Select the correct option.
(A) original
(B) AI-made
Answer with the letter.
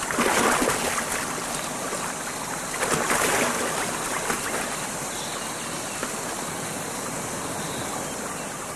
A